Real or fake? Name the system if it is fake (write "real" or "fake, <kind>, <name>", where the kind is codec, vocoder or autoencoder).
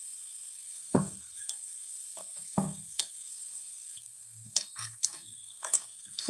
fake, codec, SNAC